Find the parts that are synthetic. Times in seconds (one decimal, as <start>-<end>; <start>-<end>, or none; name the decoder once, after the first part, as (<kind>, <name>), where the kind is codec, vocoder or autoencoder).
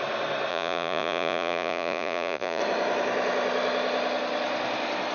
0.5-2.6 (vocoder, Vocos)